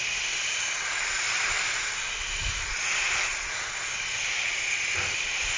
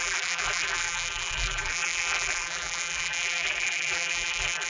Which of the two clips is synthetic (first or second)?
second